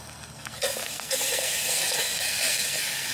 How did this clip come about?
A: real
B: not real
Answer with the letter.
B